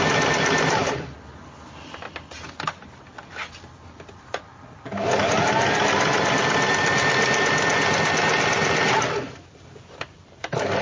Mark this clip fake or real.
real